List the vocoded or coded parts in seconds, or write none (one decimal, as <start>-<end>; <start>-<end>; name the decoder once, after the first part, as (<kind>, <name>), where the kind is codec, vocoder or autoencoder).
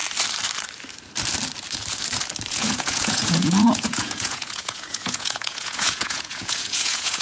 2.5-7.2 (vocoder, Vocos)